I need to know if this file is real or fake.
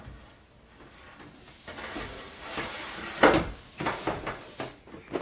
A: real